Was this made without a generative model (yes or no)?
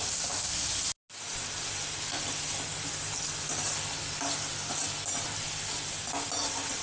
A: yes